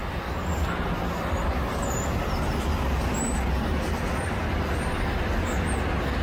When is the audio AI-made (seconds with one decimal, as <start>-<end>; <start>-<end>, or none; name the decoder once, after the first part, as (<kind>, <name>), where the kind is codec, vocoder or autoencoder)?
none